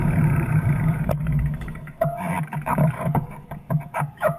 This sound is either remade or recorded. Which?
remade